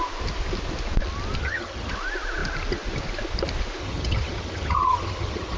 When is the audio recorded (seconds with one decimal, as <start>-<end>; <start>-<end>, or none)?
0.0-1.4; 1.9-3.8

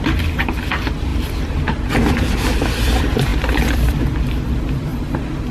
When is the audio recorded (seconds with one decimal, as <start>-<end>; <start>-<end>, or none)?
1.1-2.1; 4.9-5.5

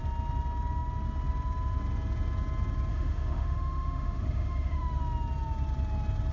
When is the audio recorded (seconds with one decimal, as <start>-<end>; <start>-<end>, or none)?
0.0-2.9; 5.0-6.3